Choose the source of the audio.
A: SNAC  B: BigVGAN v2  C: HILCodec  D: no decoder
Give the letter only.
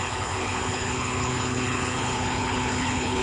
C